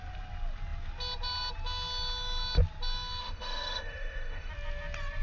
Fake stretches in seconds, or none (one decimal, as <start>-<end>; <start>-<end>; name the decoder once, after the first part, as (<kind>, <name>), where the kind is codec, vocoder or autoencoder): 3.2-4.5 (autoencoder, DAC-VAE)